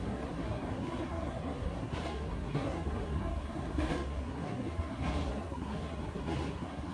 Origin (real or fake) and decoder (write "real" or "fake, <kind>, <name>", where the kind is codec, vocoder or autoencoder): fake, codec, SNAC